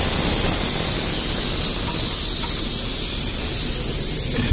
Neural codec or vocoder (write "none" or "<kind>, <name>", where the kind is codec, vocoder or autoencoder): none